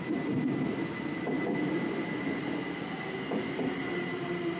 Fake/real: real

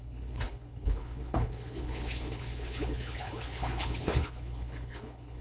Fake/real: fake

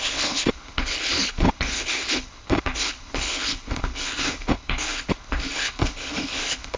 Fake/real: fake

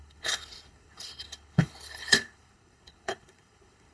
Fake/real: fake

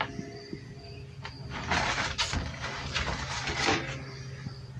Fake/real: real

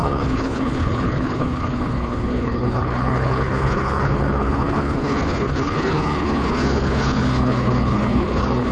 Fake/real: fake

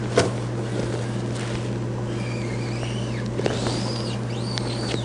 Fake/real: real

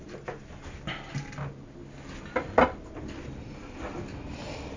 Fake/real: real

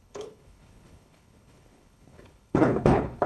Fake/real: fake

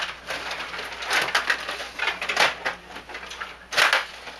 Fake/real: real